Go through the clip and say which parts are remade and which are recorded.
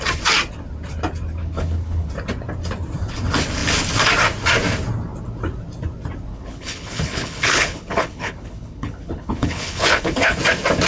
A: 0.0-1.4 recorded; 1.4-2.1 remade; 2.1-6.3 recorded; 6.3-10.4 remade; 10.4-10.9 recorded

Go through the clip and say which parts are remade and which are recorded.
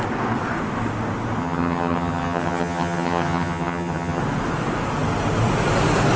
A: 0.0-1.4 recorded; 1.4-4.2 remade; 4.2-6.2 recorded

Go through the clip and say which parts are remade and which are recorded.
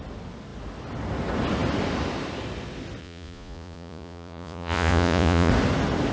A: 0.0-3.0 recorded; 3.0-5.5 remade; 5.5-6.1 recorded